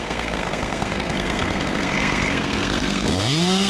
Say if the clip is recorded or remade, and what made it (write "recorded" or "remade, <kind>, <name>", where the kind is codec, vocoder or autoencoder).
remade, codec, SNAC